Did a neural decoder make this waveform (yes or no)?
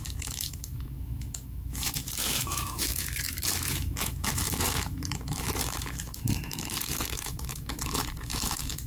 yes